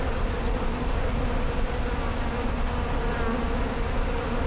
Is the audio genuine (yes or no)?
yes